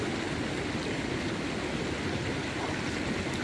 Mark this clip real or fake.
real